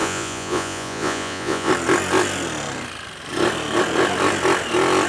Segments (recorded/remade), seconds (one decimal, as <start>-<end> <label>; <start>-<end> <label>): 0.0-1.7 remade; 1.7-5.1 recorded